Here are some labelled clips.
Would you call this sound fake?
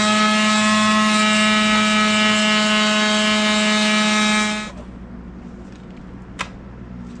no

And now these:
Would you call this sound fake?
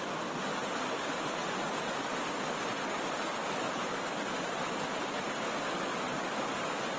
no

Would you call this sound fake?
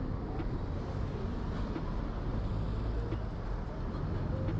no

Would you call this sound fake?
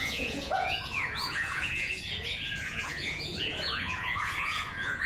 yes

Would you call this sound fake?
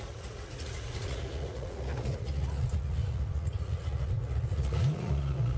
yes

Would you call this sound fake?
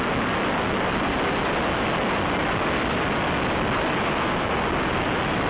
no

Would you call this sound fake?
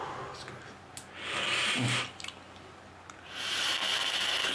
no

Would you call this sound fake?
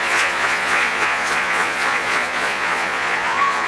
yes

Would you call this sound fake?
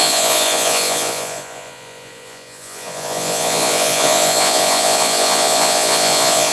yes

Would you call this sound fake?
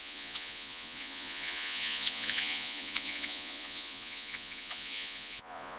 yes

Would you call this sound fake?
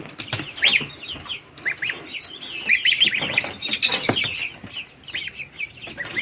no